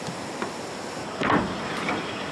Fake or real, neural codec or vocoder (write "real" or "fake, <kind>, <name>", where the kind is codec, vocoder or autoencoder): real